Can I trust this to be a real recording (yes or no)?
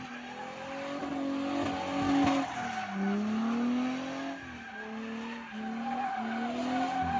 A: yes